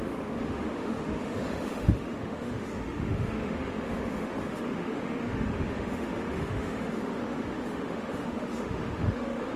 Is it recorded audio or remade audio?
remade